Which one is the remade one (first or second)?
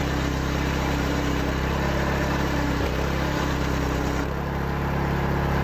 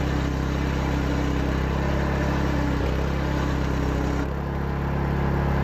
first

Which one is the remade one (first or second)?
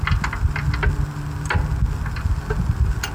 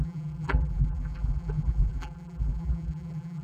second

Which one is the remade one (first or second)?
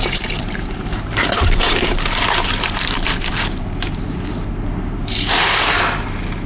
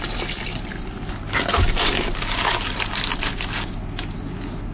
first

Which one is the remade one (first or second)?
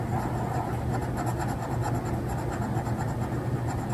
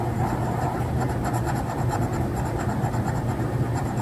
second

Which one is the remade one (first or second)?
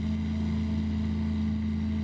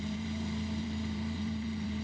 second